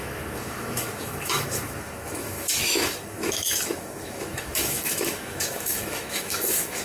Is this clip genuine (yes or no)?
no